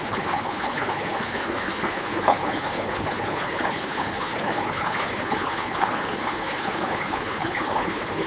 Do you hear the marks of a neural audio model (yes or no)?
yes